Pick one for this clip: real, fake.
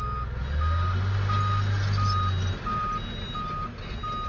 real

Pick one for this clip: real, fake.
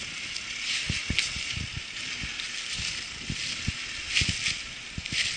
real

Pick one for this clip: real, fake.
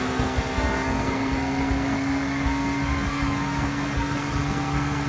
fake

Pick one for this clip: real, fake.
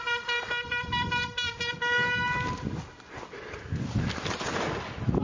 real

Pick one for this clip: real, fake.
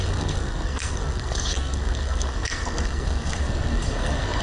fake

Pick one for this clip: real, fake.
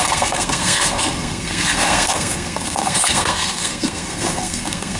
fake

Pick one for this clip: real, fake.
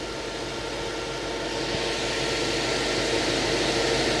real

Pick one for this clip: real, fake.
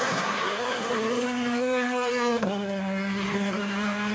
fake